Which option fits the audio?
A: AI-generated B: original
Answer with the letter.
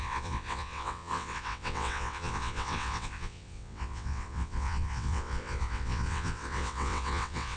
A